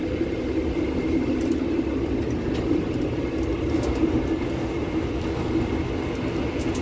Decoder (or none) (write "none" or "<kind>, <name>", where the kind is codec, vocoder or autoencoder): none